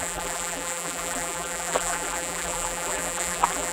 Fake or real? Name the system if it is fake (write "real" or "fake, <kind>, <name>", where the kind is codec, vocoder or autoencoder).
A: fake, vocoder, BigVGAN v2